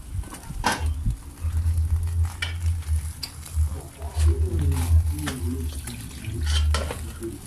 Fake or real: real